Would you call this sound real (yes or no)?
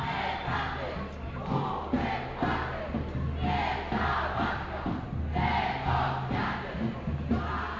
yes